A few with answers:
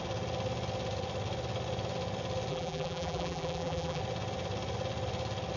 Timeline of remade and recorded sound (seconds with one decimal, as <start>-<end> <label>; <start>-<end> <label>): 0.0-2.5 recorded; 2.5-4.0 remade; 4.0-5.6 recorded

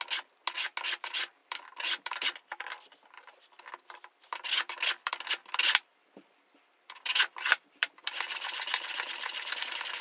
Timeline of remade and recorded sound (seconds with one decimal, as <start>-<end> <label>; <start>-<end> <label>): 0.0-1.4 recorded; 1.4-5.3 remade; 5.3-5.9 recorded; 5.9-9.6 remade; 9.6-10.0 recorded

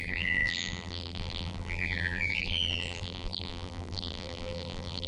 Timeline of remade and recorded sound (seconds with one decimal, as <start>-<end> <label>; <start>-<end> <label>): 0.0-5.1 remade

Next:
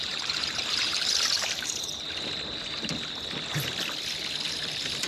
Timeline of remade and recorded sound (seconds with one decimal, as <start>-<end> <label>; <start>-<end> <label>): 0.0-2.0 remade; 2.0-5.1 recorded